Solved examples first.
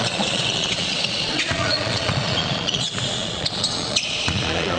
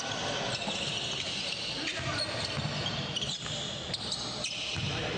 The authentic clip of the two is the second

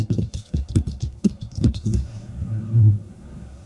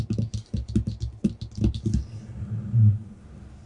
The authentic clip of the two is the second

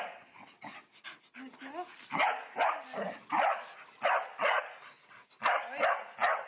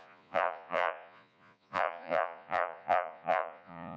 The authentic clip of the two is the first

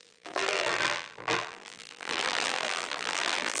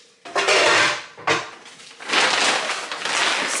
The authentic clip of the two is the second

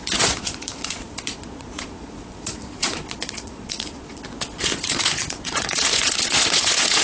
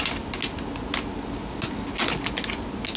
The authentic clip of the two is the second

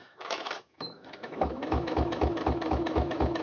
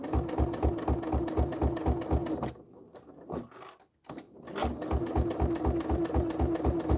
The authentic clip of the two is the second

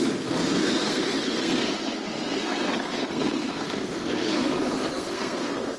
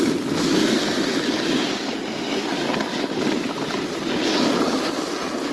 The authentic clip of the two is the second